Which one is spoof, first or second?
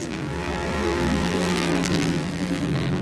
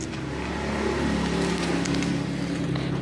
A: first